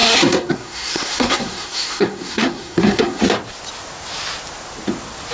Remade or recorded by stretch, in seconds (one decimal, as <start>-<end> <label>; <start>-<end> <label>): 0.0-3.2 remade; 3.2-5.3 recorded

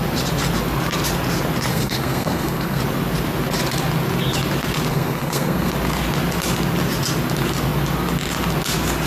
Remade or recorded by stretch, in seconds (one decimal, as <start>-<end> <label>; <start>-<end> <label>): 0.0-1.7 recorded; 1.7-2.8 remade; 2.8-4.9 recorded; 4.9-5.7 remade; 5.7-9.1 recorded

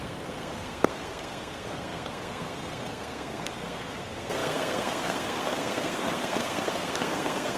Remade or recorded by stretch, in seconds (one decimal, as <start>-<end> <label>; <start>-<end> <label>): 0.0-7.6 remade

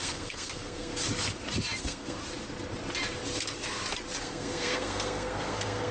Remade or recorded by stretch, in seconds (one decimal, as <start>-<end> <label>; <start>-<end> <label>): 0.0-0.9 remade; 0.9-1.8 recorded; 1.8-2.2 remade; 2.2-4.2 recorded; 4.2-5.9 remade

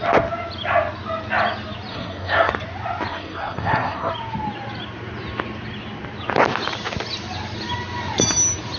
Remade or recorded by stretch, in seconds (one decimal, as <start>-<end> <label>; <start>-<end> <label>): 0.0-1.9 recorded; 1.9-2.5 remade; 2.5-3.1 recorded; 3.1-4.1 remade; 4.1-8.8 recorded

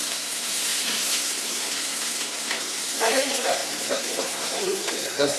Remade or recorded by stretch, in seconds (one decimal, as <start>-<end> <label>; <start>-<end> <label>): 0.0-5.4 remade